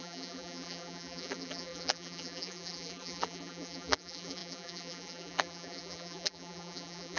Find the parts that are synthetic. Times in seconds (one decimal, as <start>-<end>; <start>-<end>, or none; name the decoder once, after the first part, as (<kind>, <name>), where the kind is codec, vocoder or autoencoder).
0.0-7.2 (vocoder, BigVGAN v2)